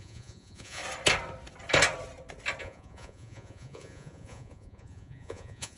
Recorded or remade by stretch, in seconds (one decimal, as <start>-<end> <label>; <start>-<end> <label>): 0.0-0.8 remade; 0.8-2.6 recorded; 2.6-5.8 remade